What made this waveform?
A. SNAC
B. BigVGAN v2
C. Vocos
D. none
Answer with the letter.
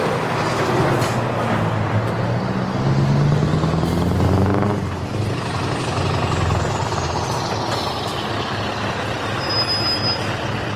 D